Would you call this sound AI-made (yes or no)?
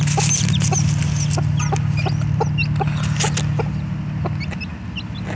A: no